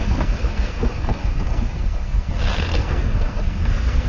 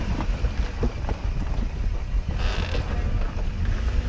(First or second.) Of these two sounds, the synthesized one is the first